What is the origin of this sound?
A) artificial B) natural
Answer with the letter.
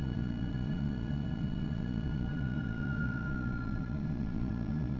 A